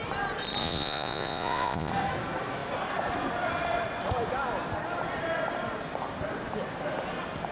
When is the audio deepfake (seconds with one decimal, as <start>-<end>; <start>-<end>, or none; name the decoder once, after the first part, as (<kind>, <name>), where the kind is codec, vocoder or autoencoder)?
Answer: 0.6-1.9 (vocoder, Vocos)